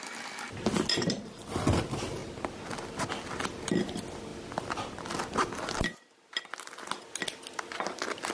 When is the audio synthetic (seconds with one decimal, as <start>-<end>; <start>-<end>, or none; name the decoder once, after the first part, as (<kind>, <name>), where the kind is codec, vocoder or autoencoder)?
none